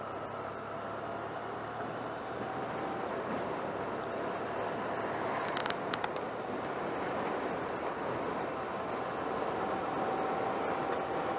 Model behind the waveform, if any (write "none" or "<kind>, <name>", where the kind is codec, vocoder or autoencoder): none